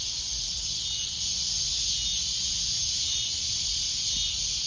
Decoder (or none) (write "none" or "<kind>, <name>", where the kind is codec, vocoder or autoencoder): none